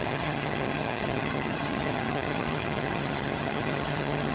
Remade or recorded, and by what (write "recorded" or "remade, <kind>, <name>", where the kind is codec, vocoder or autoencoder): remade, vocoder, HiFi-GAN